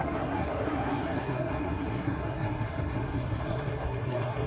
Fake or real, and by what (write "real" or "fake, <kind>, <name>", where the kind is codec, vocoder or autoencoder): fake, codec, SNAC